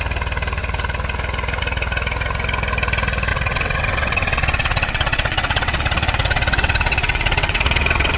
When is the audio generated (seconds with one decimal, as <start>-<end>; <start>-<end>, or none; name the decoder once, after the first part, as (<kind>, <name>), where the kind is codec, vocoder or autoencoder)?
3.3-8.2 (vocoder, WaveNeXt)